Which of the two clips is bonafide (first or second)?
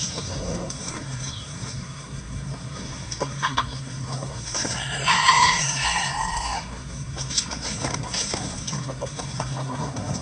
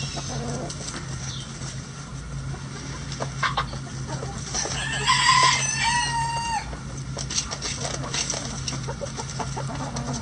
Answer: second